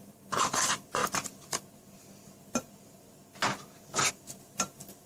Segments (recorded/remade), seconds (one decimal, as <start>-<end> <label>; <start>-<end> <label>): 0.0-5.1 recorded